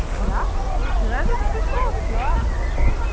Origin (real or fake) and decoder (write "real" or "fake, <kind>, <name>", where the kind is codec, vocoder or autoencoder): real